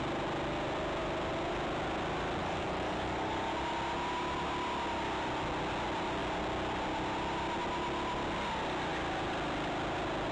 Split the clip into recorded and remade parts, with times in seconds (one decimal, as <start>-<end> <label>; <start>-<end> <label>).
0.0-2.4 recorded; 2.4-3.5 remade; 3.5-10.3 recorded